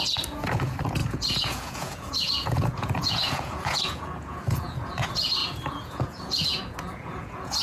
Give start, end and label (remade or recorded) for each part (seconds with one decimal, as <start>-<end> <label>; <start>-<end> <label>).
0.0-7.6 remade

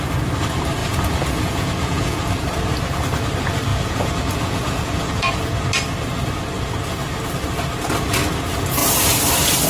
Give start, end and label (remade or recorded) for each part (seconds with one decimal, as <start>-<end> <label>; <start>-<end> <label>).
0.0-0.8 recorded; 0.8-2.2 remade; 2.2-3.7 recorded; 3.7-5.4 remade; 5.4-9.7 recorded

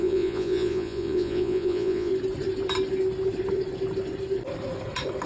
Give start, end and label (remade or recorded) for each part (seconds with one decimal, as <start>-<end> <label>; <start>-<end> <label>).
0.0-2.1 remade; 2.1-5.3 recorded

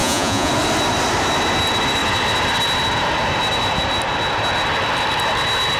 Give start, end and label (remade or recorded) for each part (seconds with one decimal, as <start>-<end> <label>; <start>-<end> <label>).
0.0-0.5 remade; 0.5-5.8 recorded